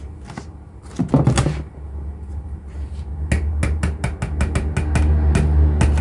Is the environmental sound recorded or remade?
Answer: recorded